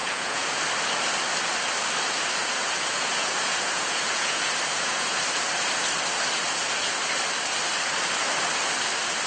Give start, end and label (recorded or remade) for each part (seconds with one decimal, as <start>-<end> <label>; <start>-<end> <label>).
0.0-0.6 remade; 0.6-2.4 recorded; 2.4-5.2 remade; 5.2-9.3 recorded

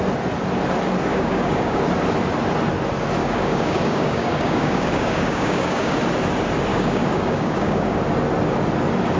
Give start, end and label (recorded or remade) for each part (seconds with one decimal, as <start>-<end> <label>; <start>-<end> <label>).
0.0-1.1 recorded; 1.1-1.8 remade; 1.8-3.2 recorded; 3.2-6.0 remade; 6.0-6.7 recorded; 6.7-8.0 remade; 8.0-9.2 recorded

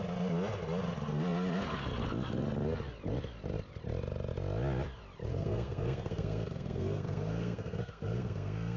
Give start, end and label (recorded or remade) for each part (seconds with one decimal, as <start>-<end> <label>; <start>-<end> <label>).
0.0-5.3 recorded; 5.3-8.8 remade

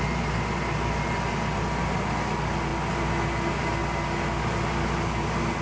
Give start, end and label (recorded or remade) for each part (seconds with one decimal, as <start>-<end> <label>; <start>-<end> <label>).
0.0-5.6 recorded

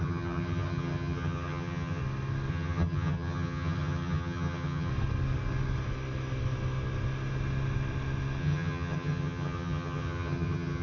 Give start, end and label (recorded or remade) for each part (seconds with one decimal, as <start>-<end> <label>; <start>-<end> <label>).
0.0-2.0 remade; 2.0-2.5 recorded; 2.5-4.9 remade; 4.9-8.4 recorded; 8.4-10.8 remade